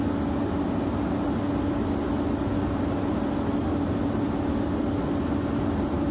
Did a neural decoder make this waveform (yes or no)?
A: no